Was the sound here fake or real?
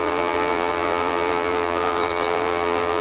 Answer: fake